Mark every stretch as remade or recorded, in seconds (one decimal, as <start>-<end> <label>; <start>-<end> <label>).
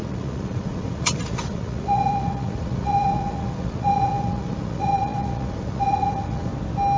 0.0-6.5 remade; 6.5-7.0 recorded